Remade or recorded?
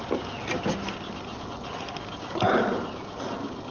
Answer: recorded